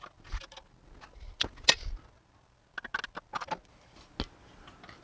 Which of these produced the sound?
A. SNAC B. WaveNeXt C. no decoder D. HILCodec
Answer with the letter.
C